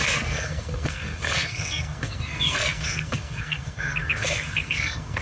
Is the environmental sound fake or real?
fake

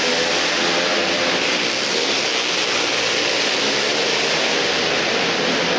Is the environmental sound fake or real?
real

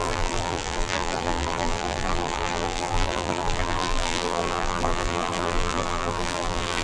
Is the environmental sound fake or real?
fake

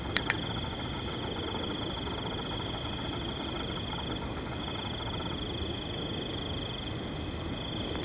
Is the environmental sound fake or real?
real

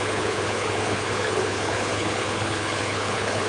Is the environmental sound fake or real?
fake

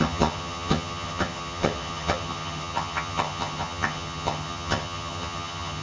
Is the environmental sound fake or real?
fake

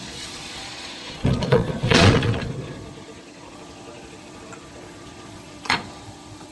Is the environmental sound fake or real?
fake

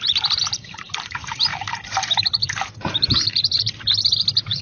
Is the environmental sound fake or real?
fake